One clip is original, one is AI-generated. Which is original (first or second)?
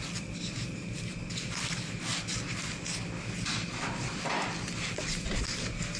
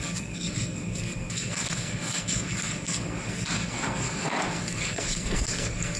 first